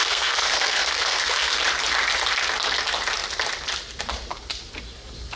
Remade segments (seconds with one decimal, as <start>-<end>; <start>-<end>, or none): 0.0-1.6